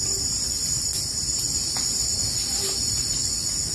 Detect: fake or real real